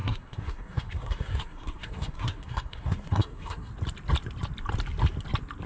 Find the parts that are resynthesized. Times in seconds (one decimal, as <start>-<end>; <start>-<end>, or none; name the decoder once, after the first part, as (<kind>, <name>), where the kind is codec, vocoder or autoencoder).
0.0-3.7 (codec, SNAC)